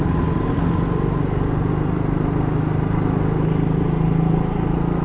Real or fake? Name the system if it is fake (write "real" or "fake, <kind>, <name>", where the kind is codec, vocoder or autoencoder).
real